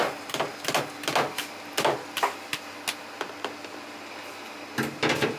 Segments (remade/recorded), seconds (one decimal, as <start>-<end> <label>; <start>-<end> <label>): 0.0-5.4 recorded